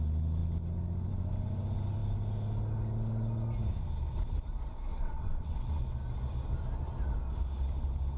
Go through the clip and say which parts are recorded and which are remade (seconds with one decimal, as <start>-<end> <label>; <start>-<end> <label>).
0.0-4.9 recorded; 4.9-5.8 remade; 5.8-8.2 recorded